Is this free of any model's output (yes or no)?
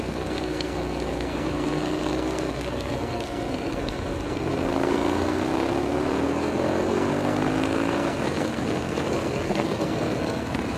no